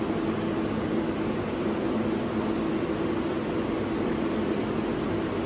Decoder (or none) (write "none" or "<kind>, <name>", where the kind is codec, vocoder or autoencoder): none